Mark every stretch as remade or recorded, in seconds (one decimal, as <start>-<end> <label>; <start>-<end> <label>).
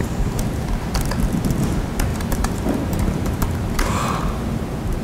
0.0-2.1 recorded; 2.1-4.2 remade; 4.2-5.0 recorded